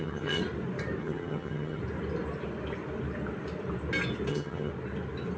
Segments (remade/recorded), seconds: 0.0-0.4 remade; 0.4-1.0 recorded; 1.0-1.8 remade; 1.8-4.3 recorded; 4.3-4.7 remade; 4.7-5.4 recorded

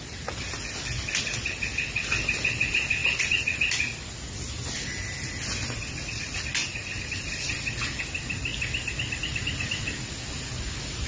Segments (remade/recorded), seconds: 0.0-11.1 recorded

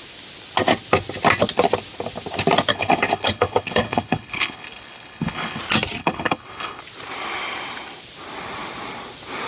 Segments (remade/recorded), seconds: 0.0-2.7 recorded; 2.7-5.6 remade; 5.6-6.0 recorded; 6.0-6.8 remade; 6.8-9.5 recorded

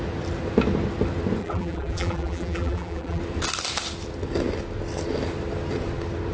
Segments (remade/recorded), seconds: 0.0-1.4 recorded; 1.4-3.2 remade; 3.2-6.3 recorded

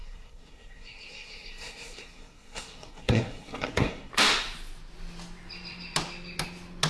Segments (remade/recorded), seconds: 0.0-4.1 remade; 4.1-6.9 recorded

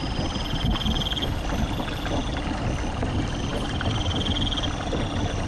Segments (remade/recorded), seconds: 0.0-5.5 recorded

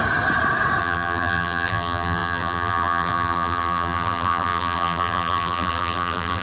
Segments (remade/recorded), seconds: 0.0-0.8 recorded; 0.8-6.4 remade

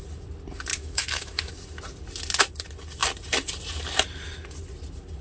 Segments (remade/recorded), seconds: 0.0-0.7 recorded; 0.7-1.5 remade; 1.5-5.2 recorded